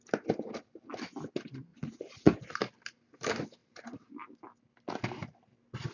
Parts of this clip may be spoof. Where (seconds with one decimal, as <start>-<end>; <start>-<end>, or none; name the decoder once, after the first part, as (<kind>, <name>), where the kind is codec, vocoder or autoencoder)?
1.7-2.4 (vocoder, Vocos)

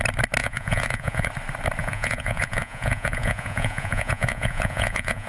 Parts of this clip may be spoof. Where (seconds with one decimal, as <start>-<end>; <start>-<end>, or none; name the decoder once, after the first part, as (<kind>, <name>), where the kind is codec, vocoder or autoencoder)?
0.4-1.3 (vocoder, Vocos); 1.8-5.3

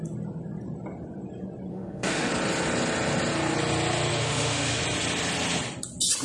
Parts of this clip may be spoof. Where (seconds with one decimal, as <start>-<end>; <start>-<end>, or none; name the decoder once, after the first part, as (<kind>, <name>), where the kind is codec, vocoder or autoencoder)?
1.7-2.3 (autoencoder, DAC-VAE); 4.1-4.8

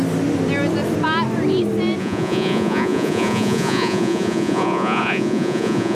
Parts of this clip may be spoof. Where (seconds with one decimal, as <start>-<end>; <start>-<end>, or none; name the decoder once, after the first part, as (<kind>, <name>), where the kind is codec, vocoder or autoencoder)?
2.0-5.9 (vocoder, Vocos)

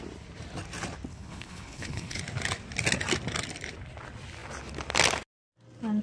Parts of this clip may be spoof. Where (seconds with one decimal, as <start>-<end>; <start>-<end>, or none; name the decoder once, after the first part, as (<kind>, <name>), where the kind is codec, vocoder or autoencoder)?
1.1-2.2 (codec, HILCodec)